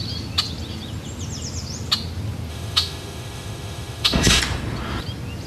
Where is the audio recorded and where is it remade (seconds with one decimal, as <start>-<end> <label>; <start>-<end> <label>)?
0.0-2.5 recorded; 2.5-4.4 remade; 4.4-5.5 recorded